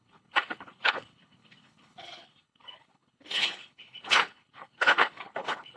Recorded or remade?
remade